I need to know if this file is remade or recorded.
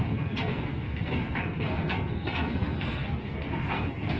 remade